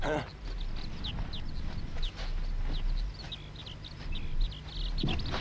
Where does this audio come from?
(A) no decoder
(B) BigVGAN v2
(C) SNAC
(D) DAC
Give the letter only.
A